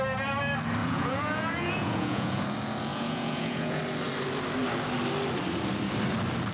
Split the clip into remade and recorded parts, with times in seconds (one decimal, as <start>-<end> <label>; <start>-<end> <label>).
0.0-0.8 recorded; 0.8-2.4 remade; 2.4-2.9 recorded; 2.9-3.8 remade; 3.8-6.5 recorded